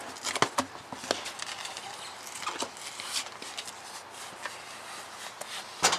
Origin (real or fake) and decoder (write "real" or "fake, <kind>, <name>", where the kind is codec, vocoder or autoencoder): real